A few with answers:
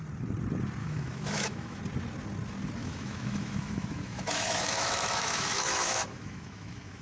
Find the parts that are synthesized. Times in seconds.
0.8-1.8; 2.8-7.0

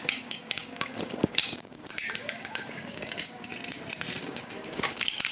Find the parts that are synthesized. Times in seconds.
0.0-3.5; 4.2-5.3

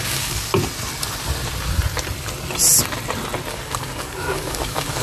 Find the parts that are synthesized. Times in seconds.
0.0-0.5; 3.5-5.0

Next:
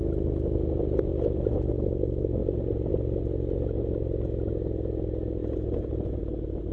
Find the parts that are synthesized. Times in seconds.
2.4-2.9; 5.4-6.2

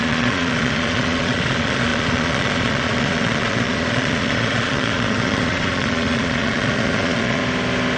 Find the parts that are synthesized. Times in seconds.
0.0-7.4

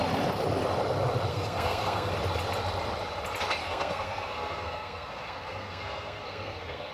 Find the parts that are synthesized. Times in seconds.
1.3-2.1; 3.6-6.9